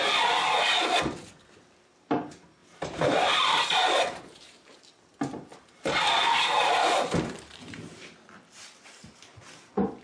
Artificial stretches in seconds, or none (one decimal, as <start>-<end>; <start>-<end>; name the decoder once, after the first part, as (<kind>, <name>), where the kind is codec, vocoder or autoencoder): 2.6-4.8 (vocoder, BigVGAN v2); 5.5-9.0